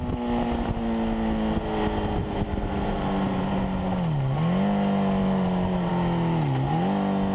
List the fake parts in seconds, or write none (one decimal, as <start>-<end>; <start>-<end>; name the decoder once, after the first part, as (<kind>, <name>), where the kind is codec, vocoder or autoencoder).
2.2-3.6 (vocoder, BigVGAN v2); 5.2-5.9